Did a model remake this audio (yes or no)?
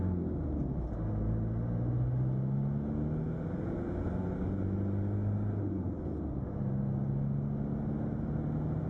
no